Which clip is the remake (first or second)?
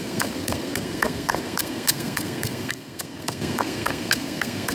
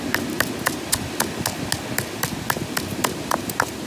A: first